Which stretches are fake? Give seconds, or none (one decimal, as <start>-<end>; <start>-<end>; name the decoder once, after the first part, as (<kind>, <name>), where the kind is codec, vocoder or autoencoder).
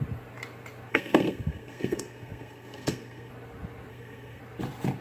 0.9-3.3 (codec, SNAC); 3.9-4.4